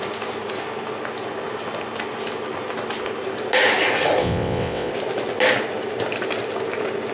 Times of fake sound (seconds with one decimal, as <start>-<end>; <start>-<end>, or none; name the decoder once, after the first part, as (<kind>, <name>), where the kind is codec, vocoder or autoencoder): 4.2-4.9 (vocoder, WaveNeXt)